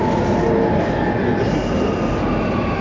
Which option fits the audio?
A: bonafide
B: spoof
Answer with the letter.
A